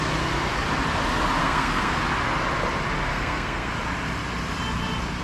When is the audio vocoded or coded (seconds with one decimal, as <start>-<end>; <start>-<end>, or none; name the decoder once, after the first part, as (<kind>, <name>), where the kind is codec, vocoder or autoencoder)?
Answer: 1.4-2.0 (codec, SNAC); 3.1-3.7